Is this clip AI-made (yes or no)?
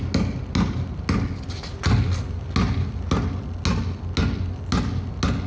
no